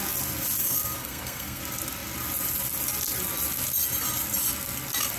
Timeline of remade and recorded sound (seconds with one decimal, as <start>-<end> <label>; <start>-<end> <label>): 0.0-0.6 recorded; 0.6-1.6 remade; 1.6-5.2 recorded